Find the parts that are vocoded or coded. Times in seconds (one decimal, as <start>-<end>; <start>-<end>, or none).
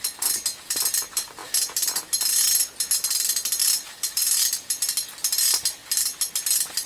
3.6-4.2